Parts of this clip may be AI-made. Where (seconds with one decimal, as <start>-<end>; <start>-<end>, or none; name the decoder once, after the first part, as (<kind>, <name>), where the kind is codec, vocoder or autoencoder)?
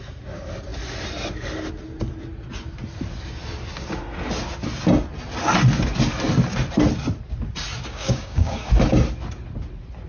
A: 7.9-8.7 (codec, DAC)